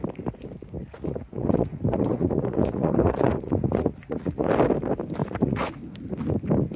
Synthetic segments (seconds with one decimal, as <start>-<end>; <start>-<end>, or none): 0.8-4.5; 5.2-5.7